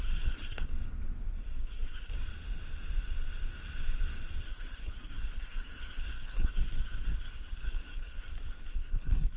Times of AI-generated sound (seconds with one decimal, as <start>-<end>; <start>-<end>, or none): 0.0-0.7; 1.5-2.3; 4.4-9.4

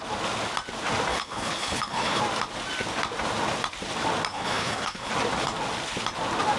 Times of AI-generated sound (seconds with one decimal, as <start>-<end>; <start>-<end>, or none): 1.1-2.2; 4.3-5.1

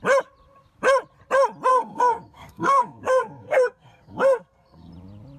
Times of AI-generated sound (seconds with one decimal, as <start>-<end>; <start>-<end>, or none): 1.7-4.9